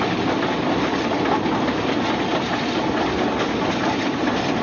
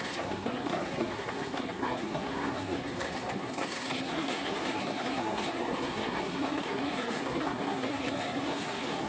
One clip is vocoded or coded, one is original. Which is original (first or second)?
first